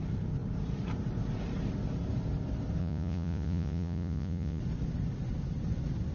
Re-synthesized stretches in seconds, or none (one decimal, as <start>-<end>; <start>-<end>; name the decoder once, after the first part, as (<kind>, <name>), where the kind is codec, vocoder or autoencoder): 2.8-4.6 (vocoder, Vocos)